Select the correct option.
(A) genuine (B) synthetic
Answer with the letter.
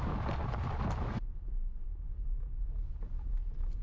A